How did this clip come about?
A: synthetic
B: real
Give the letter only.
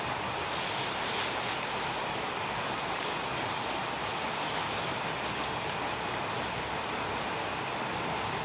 B